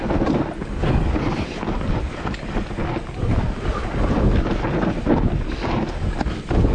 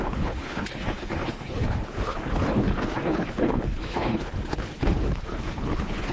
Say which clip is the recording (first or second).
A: first